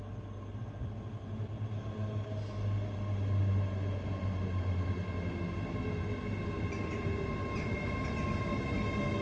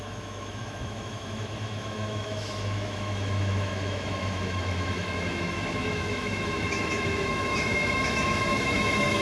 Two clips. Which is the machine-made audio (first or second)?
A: second